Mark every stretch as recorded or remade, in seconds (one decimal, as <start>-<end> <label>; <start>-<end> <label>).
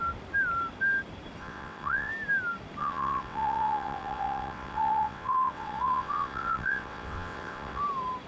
0.0-1.4 recorded; 1.4-2.1 remade; 2.1-2.8 recorded; 2.8-7.8 remade; 7.8-8.3 recorded